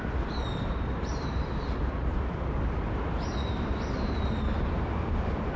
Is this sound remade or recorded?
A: remade